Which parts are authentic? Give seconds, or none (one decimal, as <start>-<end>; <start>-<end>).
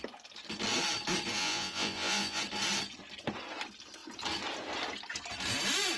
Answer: 0.0-1.4; 2.4-6.0